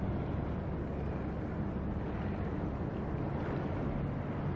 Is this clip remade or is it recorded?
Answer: recorded